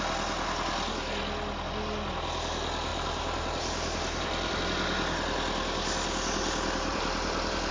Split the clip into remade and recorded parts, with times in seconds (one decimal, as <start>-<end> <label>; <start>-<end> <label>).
0.0-2.9 recorded; 2.9-4.6 remade; 4.6-6.9 recorded; 6.9-7.7 remade

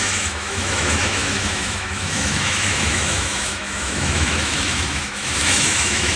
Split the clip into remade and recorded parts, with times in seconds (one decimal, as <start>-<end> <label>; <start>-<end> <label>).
0.0-6.2 remade

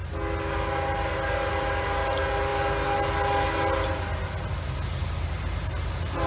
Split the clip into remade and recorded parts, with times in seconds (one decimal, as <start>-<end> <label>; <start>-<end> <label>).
0.0-6.3 recorded

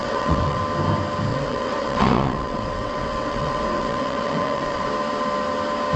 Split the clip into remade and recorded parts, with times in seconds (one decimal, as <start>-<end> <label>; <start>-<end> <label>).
0.0-0.6 remade; 0.6-1.3 recorded; 1.3-4.9 remade; 4.9-6.0 recorded

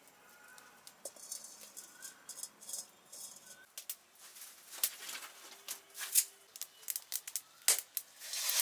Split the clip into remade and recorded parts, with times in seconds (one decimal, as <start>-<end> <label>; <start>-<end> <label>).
0.0-0.5 recorded; 0.5-2.3 remade; 2.3-4.3 recorded; 4.3-6.2 remade; 6.2-8.6 recorded

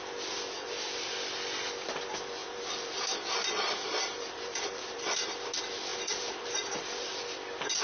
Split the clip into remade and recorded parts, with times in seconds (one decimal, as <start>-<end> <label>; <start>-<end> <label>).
0.0-2.4 recorded; 2.4-5.1 remade; 5.1-5.9 recorded; 5.9-7.1 remade; 7.1-7.8 recorded

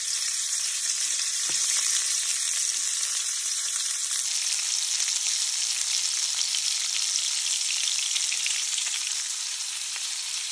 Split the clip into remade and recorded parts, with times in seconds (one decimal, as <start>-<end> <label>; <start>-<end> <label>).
0.0-2.3 remade; 2.3-3.1 recorded; 3.1-4.0 remade; 4.0-8.5 recorded; 8.5-10.5 remade